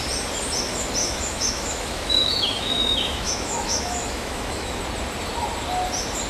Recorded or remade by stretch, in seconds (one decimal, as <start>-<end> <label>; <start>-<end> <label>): 0.0-1.0 recorded; 1.0-4.8 remade; 4.8-6.3 recorded